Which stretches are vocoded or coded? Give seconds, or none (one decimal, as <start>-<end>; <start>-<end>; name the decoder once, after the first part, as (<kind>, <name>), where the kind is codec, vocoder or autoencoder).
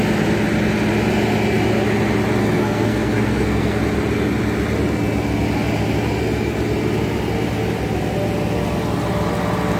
2.4-3.8 (codec, SNAC)